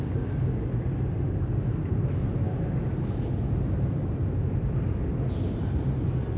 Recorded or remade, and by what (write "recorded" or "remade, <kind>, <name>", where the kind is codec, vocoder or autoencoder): recorded